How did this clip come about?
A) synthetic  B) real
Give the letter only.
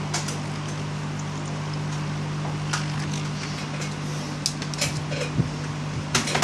B